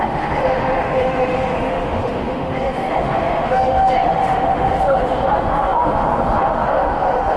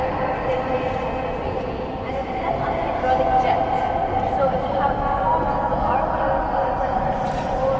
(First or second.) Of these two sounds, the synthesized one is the first